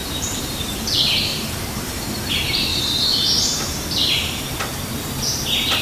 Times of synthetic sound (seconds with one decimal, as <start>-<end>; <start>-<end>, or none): 0.0-0.8; 1.3-2.3